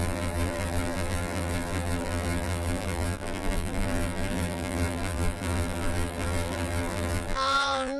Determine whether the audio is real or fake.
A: fake